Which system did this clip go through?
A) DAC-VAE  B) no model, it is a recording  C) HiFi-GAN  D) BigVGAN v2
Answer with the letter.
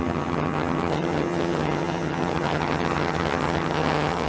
C